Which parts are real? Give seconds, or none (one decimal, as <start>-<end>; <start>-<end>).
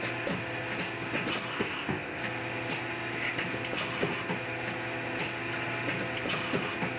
0.0-1.5; 2.2-7.0